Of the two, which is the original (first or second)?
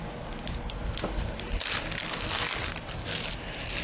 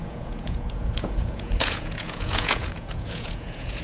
first